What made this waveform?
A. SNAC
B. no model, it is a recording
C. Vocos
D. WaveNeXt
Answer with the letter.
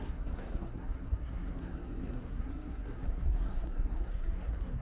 A